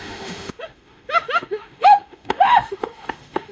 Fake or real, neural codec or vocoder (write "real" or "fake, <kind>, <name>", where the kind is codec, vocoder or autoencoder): fake, autoencoder, DAC-VAE